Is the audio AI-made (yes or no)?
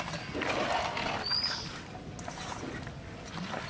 no